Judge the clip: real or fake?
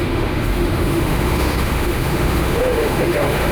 fake